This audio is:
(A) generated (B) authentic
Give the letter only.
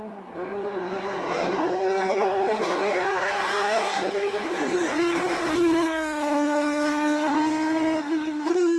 A